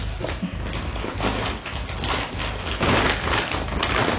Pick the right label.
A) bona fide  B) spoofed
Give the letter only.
A